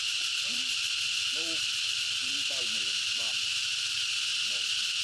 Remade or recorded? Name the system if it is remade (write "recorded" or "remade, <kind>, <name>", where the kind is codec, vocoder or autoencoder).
remade, vocoder, BigVGAN v2